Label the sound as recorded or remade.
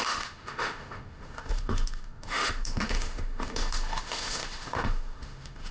remade